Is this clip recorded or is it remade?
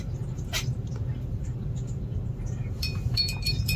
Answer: remade